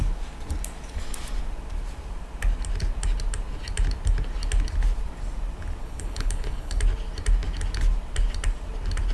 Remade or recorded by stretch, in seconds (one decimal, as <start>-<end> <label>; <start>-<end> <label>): 0.0-5.8 recorded; 5.8-6.8 remade; 6.8-9.1 recorded